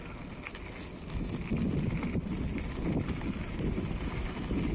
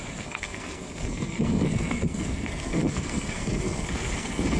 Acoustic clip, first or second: first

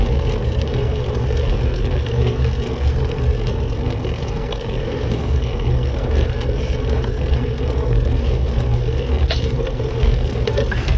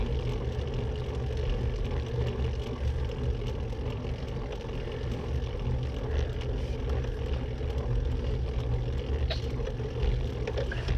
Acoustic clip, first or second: second